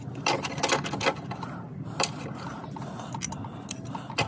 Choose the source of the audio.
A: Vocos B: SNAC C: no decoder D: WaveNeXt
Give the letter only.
C